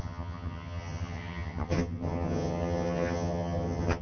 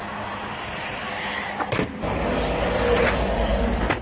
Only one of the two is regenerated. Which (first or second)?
first